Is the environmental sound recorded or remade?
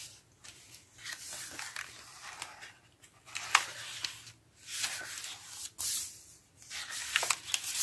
recorded